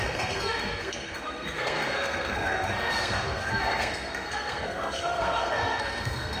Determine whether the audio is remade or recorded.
remade